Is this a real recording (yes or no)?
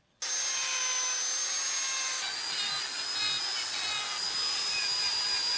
yes